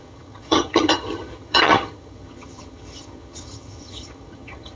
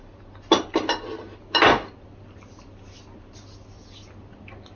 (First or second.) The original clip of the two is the second